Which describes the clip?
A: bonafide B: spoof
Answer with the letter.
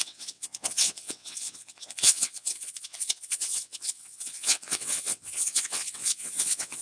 B